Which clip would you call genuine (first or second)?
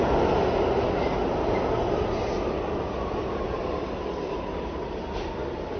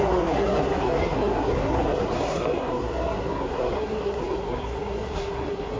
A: first